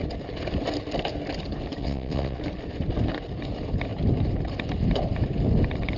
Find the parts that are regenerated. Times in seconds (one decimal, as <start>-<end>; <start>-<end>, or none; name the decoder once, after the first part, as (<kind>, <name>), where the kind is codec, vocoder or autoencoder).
1.8-2.4 (vocoder, WaveNeXt)